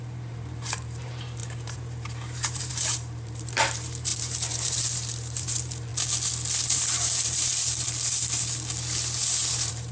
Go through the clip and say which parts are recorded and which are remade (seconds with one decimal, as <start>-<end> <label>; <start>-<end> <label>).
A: 0.0-5.9 remade; 5.9-6.6 recorded; 6.6-7.5 remade; 7.5-9.5 recorded; 9.5-9.9 remade